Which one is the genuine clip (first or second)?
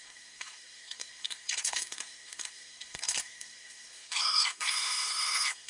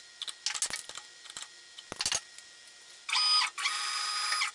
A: second